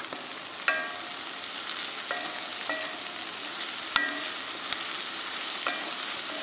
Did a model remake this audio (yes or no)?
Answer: no